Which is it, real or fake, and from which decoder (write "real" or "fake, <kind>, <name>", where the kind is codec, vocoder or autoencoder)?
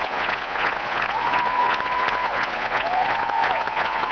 fake, vocoder, Vocos